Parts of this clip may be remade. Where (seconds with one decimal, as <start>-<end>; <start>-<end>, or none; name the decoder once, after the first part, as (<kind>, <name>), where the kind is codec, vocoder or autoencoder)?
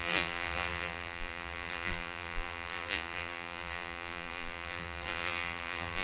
0.0-6.0 (vocoder, BigVGAN v2)